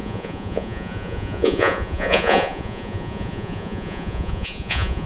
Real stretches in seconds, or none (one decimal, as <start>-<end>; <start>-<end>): none